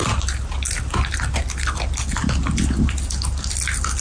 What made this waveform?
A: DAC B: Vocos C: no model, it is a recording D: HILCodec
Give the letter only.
C